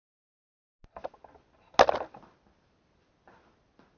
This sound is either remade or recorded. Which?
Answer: recorded